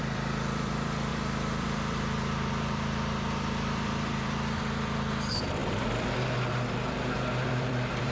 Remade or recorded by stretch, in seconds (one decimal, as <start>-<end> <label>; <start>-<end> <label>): 0.0-8.1 remade